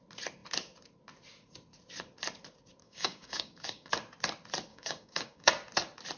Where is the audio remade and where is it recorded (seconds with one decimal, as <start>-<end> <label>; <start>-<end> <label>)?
0.0-2.8 recorded; 2.8-3.9 remade; 3.9-4.7 recorded; 4.7-5.5 remade; 5.5-6.2 recorded